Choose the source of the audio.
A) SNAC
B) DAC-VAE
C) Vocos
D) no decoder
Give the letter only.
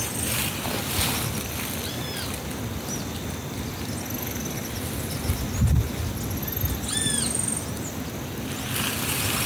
D